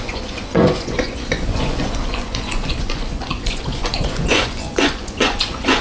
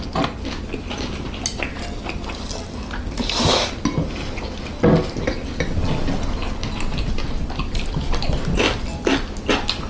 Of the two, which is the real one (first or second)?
second